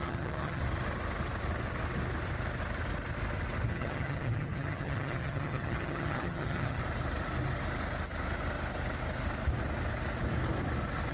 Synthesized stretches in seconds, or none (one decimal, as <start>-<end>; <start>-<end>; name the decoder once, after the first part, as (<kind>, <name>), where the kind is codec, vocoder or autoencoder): 0.0-0.6 (vocoder, HiFi-GAN); 3.7-6.8